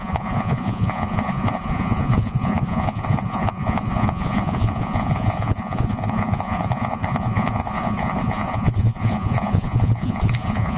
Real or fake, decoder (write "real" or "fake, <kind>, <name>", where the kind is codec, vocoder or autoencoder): fake, vocoder, Vocos